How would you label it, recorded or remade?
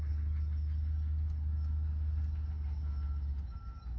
recorded